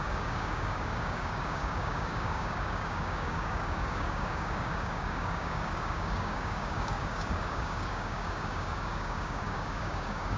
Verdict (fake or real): fake